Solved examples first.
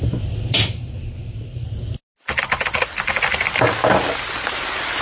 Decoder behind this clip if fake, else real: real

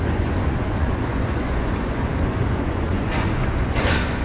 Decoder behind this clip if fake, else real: fake, vocoder, Vocos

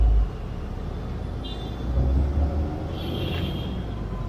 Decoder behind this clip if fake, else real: real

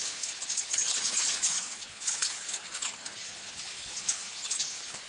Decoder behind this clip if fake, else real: fake, codec, HILCodec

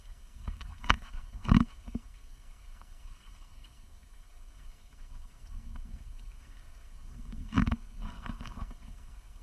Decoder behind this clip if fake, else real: fake, codec, SNAC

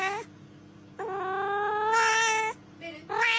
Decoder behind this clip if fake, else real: real